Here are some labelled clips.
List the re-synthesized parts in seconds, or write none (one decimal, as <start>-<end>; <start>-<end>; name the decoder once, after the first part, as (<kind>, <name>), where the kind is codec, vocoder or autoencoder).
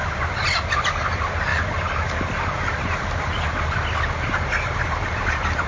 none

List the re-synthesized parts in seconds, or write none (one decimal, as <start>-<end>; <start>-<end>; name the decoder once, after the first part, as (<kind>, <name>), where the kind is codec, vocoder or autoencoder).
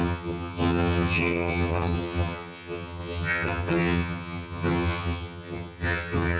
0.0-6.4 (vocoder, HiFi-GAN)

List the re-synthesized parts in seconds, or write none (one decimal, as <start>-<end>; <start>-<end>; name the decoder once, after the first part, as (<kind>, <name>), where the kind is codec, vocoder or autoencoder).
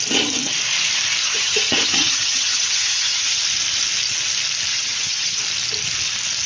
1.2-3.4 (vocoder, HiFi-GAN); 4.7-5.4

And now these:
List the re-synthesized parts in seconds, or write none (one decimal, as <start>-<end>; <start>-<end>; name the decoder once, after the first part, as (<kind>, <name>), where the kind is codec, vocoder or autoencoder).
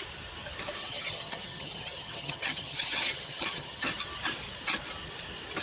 0.8-3.9 (vocoder, HiFi-GAN)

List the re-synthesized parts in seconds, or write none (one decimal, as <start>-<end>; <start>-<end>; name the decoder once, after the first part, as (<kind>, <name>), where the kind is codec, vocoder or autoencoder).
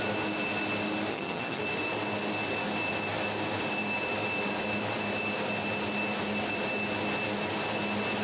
1.1-1.6 (vocoder, HiFi-GAN)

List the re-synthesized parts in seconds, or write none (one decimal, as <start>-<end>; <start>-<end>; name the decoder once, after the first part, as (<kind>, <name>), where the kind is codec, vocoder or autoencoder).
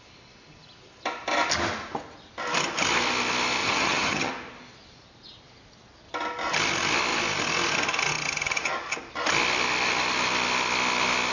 3.6-4.3 (vocoder, HiFi-GAN)